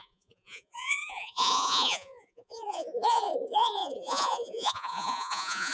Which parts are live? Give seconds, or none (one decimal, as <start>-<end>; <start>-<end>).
none